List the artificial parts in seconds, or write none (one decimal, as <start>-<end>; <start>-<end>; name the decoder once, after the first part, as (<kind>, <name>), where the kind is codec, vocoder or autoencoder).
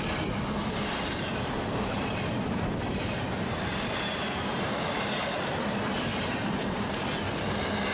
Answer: 0.6-5.3 (vocoder, BigVGAN v2); 6.1-7.0